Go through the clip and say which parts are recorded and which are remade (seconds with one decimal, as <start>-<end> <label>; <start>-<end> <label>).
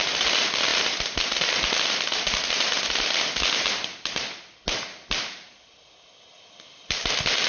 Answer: 0.0-7.5 recorded